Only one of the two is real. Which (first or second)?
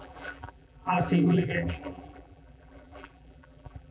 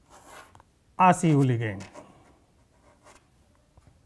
second